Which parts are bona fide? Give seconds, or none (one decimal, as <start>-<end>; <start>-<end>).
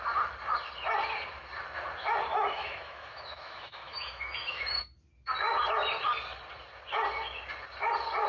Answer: 0.0-2.3; 4.8-8.3